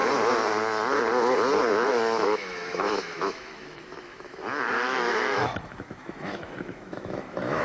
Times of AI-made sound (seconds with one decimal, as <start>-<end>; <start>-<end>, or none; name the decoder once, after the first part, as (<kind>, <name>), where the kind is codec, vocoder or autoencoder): 1.7-7.6 (autoencoder, DAC-VAE)